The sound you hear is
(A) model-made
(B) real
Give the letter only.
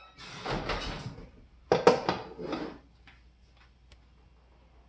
B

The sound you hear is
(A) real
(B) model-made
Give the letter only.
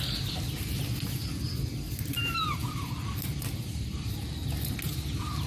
A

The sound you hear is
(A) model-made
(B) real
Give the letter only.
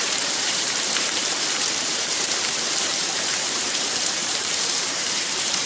A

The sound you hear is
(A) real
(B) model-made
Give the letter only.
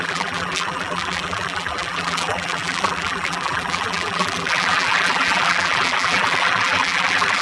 B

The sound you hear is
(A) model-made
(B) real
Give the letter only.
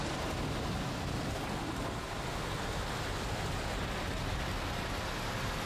B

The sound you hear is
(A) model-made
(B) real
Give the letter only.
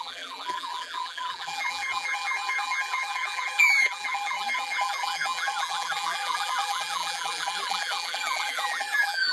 A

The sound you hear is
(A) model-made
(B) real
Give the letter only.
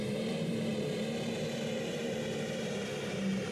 A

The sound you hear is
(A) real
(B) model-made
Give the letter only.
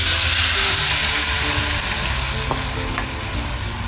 A